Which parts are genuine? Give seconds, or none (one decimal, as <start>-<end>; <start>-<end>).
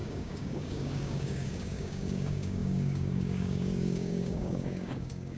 none